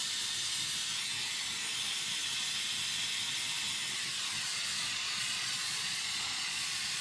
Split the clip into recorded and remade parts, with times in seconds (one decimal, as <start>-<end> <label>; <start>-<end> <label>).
0.0-4.9 recorded; 4.9-7.0 remade